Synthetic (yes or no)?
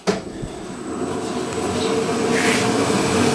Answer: no